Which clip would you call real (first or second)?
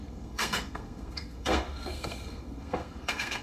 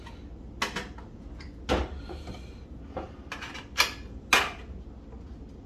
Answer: second